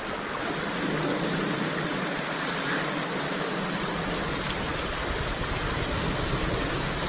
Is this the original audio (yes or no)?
yes